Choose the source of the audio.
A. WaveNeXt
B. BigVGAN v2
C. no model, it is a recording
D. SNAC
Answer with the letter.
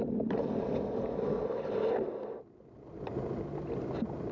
C